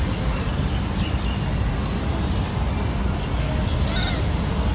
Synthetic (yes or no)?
no